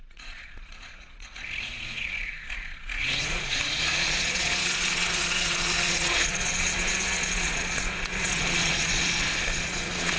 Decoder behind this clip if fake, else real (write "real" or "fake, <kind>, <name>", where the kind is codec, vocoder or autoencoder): fake, vocoder, Vocos